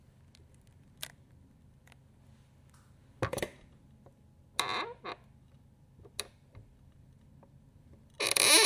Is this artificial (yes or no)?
no